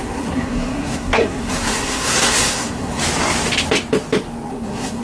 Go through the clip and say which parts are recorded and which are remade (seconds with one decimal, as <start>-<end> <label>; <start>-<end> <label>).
0.0-3.0 remade; 3.0-4.5 recorded; 4.5-5.0 remade